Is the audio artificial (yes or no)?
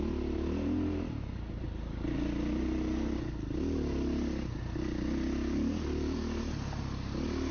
no